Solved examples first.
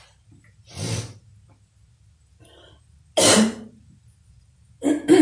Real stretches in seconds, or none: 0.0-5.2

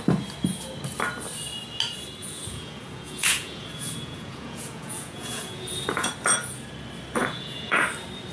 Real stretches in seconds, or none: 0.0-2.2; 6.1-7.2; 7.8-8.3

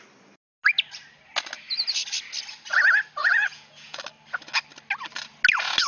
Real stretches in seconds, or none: 0.0-3.2; 4.0-5.9

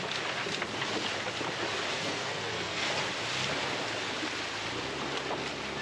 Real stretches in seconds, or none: 0.0-1.9; 2.9-5.8

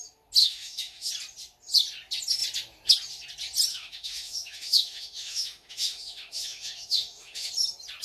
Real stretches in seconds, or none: 0.0-0.4; 1.1-3.7; 7.5-8.0